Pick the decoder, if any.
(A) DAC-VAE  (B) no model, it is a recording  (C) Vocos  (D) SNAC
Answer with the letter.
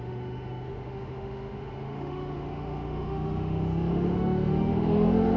A